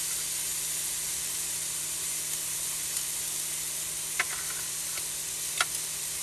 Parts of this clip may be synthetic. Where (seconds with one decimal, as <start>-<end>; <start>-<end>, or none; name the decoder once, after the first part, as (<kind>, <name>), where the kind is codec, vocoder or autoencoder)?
none